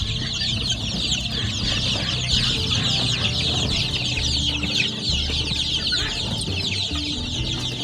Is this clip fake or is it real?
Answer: real